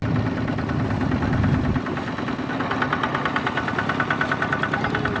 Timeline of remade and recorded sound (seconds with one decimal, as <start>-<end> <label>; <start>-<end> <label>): 0.0-5.2 recorded